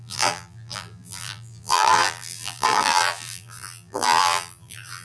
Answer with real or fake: fake